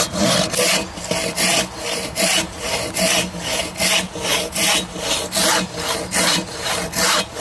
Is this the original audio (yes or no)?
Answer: yes